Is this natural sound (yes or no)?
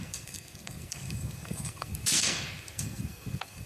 no